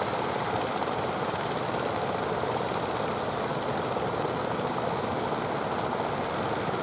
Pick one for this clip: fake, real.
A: real